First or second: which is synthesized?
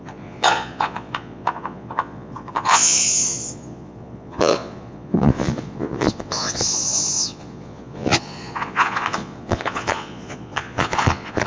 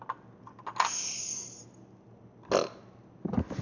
first